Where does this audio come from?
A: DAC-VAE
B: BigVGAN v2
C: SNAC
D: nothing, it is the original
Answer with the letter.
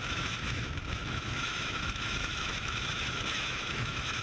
A